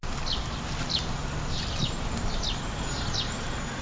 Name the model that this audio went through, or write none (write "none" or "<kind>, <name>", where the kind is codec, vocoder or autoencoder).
none